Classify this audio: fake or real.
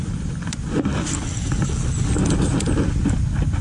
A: real